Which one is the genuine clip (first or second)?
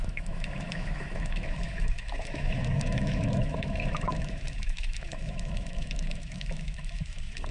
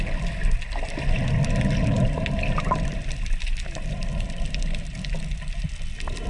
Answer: second